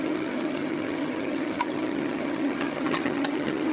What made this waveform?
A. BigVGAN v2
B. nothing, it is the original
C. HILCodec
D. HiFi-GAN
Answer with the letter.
D